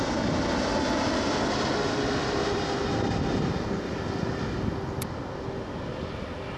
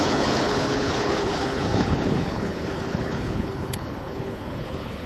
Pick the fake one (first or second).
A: second